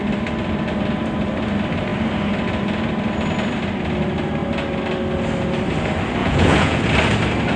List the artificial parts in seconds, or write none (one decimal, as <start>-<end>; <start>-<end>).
6.2-6.8